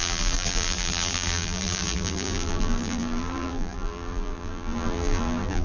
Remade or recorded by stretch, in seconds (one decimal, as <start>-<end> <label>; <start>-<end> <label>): 0.0-5.6 remade